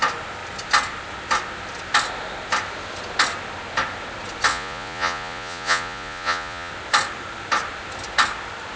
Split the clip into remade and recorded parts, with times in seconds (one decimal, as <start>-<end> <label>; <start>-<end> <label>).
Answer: 0.0-4.5 recorded; 4.5-6.7 remade; 6.7-8.8 recorded